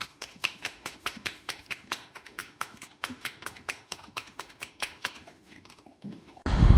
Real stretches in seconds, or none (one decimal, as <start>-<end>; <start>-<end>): none